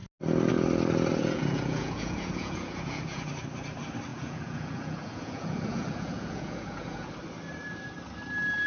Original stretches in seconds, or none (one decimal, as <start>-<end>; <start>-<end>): 0.0-1.2; 3.3-4.1; 7.1-8.7